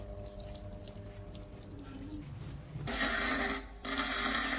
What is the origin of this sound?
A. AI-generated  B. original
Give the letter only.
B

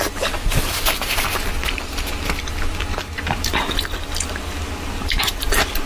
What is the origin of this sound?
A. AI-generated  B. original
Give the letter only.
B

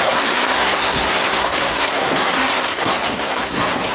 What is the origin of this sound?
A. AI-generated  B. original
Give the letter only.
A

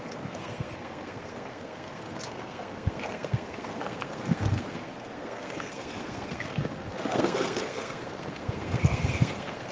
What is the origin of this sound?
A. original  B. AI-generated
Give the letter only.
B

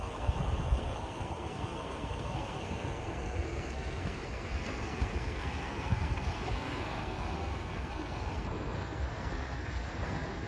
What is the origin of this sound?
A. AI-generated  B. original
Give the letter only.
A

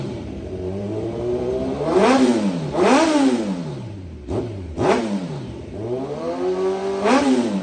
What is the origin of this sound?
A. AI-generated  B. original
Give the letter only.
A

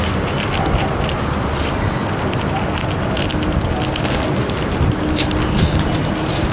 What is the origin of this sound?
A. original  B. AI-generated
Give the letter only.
A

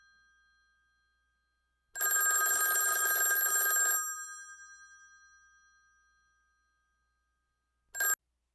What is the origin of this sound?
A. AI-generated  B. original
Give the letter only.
B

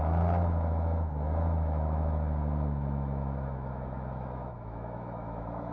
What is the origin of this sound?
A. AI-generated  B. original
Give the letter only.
A